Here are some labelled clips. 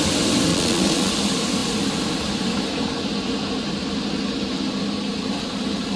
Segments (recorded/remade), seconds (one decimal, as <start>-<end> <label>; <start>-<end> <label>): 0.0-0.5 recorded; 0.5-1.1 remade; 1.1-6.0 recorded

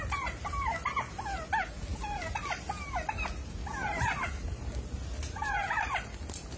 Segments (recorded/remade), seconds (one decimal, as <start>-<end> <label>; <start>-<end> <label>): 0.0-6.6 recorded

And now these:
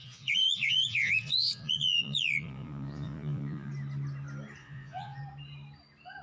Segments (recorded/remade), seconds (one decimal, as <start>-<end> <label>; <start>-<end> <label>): 0.0-3.7 remade; 3.7-4.6 recorded; 4.6-5.2 remade; 5.2-6.2 recorded